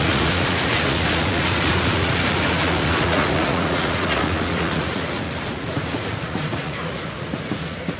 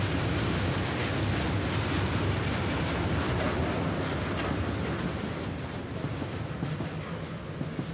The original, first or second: second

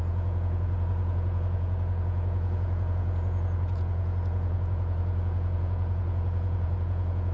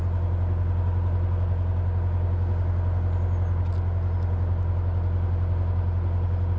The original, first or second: second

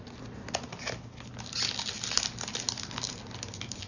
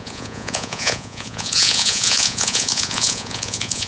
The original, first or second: first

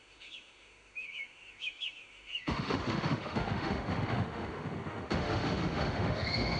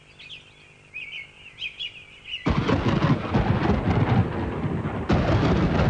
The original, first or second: second